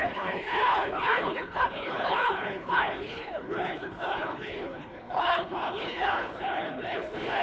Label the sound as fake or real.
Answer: fake